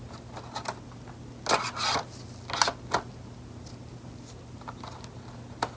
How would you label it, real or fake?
real